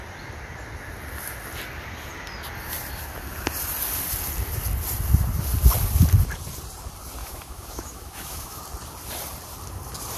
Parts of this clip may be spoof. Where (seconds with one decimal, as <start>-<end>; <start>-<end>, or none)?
7.2-8.6